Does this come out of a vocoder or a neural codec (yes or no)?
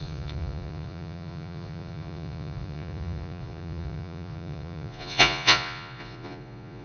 yes